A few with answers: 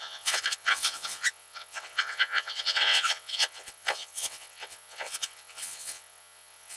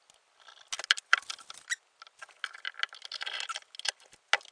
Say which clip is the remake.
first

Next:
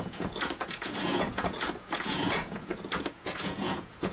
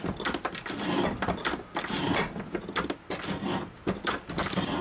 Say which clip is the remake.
first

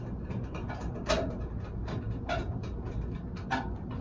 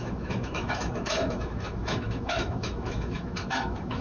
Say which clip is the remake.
second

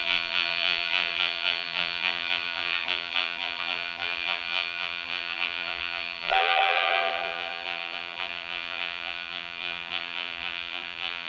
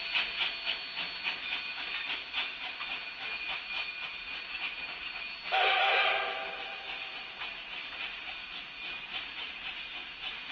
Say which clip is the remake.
first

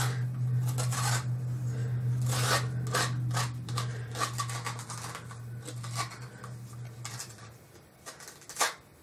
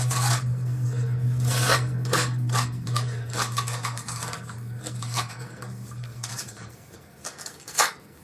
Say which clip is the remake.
second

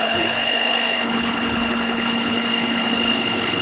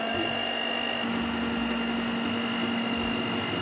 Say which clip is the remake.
first